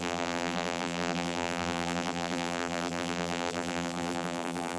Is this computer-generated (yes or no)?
yes